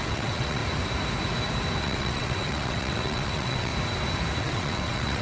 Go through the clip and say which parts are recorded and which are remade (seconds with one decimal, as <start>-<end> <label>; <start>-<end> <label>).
0.0-0.6 remade; 0.6-1.8 recorded; 1.8-3.7 remade; 3.7-4.4 recorded; 4.4-5.2 remade